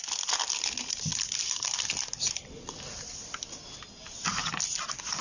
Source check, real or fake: real